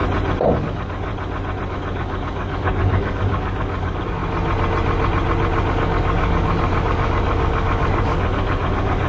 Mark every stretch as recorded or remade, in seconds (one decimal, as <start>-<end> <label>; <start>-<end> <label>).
0.0-0.6 recorded; 0.6-1.1 remade; 1.1-1.7 recorded; 1.7-4.2 remade; 4.2-5.7 recorded; 5.7-9.1 remade

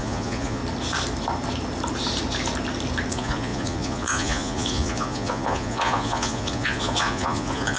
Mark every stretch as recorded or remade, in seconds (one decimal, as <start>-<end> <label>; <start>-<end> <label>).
0.0-0.6 remade; 0.6-3.1 recorded; 3.1-7.8 remade